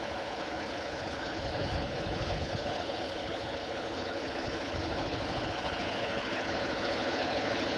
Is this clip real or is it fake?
fake